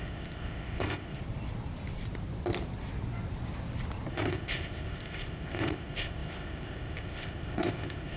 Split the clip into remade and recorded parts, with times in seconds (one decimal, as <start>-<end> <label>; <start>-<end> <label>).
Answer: 0.0-1.2 remade; 1.2-4.1 recorded; 4.1-8.2 remade